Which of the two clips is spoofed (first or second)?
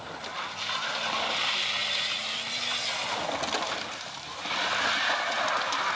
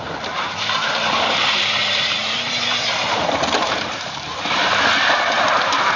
second